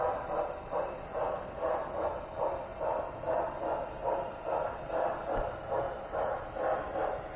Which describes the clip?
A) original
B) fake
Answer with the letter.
A